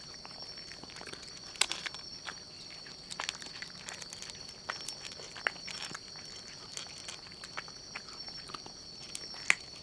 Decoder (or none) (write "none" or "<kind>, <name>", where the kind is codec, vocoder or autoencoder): none